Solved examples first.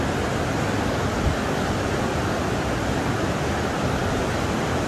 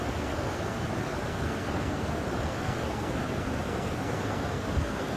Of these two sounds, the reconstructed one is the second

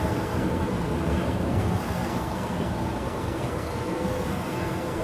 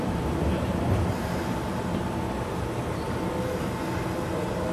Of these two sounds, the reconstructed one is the first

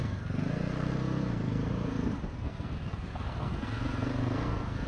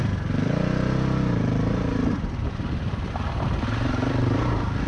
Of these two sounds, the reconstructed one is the first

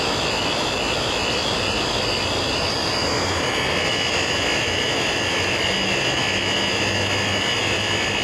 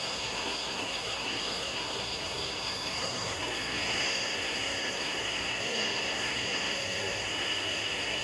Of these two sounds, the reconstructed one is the second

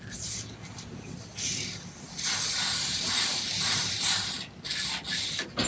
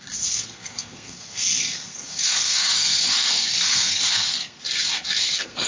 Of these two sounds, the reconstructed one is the second